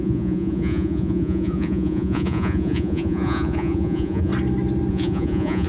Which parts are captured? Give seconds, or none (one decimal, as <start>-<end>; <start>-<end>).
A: 4.3-4.9